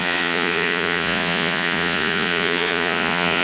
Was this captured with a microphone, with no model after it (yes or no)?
no